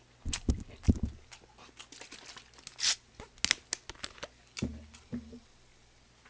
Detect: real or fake real